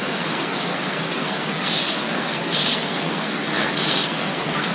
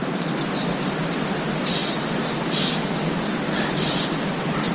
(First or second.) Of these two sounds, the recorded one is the second